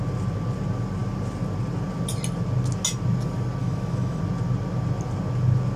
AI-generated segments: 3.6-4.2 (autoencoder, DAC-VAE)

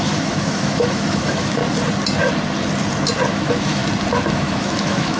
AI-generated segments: 0.0-1.6 (autoencoder, DAC-VAE); 3.3-3.8; 4.3-5.2

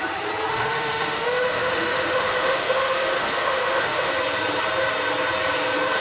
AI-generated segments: 0.5-4.1 (autoencoder, DAC-VAE)

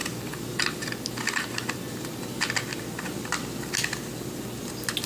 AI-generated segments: none

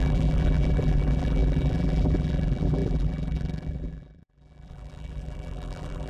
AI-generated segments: 0.0-6.1 (vocoder, BigVGAN v2)

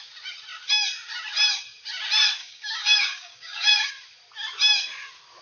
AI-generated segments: 2.4-3.9 (codec, DAC)